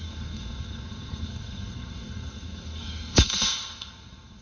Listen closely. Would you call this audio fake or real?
fake